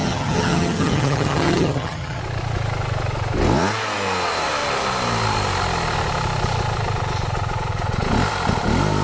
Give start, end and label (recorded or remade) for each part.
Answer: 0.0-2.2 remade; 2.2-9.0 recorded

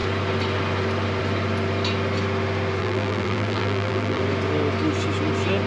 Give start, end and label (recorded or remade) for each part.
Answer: 0.0-2.8 recorded; 2.8-4.2 remade; 4.2-5.7 recorded

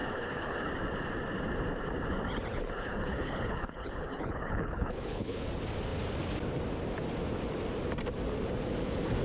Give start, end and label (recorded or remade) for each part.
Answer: 0.0-0.7 remade; 0.7-2.5 recorded; 2.5-5.5 remade; 5.5-9.2 recorded

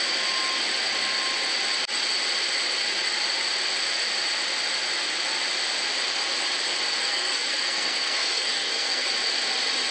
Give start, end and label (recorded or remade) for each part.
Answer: 0.0-7.0 recorded; 7.0-9.1 remade; 9.1-9.9 recorded

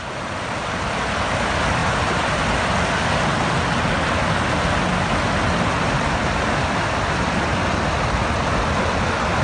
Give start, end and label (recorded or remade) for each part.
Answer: 0.0-9.4 recorded

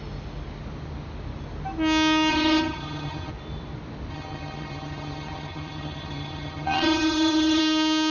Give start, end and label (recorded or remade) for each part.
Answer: 0.0-2.3 recorded; 2.3-3.3 remade; 3.3-4.1 recorded; 4.1-7.6 remade; 7.6-8.1 recorded

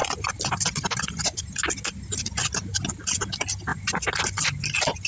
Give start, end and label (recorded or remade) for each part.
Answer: 0.0-5.1 recorded